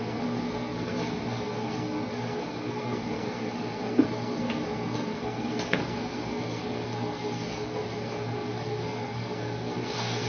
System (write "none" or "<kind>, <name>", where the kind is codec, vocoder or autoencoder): codec, SNAC